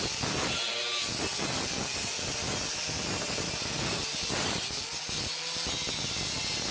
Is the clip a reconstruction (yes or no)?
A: no